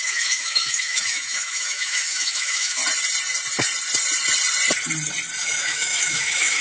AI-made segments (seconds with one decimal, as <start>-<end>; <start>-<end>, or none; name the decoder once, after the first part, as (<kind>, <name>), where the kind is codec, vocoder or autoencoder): 0.0-2.8 (autoencoder, DAC-VAE); 5.4-6.6